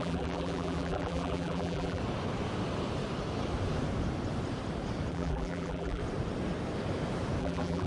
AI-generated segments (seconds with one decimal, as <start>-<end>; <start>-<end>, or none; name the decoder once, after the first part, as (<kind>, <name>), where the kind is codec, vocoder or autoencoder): 0.0-2.0 (vocoder, BigVGAN v2); 5.1-6.0; 7.4-7.9